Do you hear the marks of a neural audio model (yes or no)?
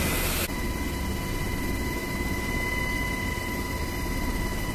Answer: no